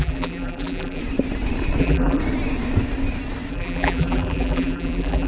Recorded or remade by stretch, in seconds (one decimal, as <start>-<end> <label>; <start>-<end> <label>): 0.0-1.0 remade; 1.0-1.8 recorded; 1.8-2.2 remade; 2.2-3.5 recorded; 3.5-5.3 remade